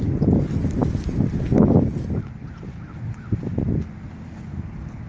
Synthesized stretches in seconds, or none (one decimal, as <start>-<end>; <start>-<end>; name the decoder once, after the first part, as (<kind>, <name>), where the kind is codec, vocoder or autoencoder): none

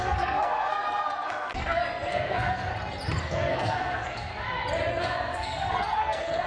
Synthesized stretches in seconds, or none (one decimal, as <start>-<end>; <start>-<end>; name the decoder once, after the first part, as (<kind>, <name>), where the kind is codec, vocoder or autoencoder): 0.0-2.7 (codec, SNAC); 3.2-4.3; 4.9-6.5

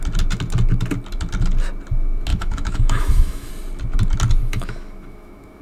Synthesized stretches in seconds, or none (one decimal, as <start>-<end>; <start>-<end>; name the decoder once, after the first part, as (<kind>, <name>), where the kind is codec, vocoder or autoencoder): 2.3-3.5 (autoencoder, DAC-VAE); 4.4-5.6

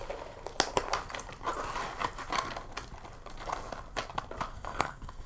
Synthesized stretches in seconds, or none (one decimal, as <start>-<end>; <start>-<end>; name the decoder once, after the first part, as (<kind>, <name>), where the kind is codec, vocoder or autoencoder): 4.5-5.3 (codec, SNAC)

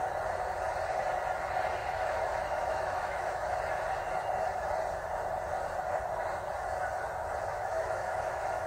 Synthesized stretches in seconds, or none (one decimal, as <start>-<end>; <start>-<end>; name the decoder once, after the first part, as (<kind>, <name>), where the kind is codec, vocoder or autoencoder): 1.8-3.6 (autoencoder, DAC-VAE); 7.5-8.7

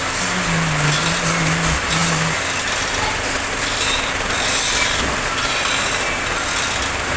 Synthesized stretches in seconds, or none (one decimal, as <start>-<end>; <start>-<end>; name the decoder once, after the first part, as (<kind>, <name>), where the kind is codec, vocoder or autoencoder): none

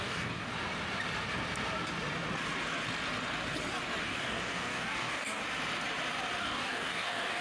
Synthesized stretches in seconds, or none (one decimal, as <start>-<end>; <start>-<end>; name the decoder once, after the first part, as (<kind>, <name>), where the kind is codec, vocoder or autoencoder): 0.0-0.5 (codec, DAC); 4.0-5.4; 6.4-7.4

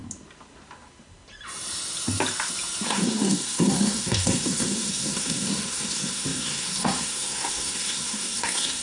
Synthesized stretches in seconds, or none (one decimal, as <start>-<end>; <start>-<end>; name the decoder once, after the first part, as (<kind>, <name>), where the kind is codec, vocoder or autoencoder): 2.9-8.8 (codec, SNAC)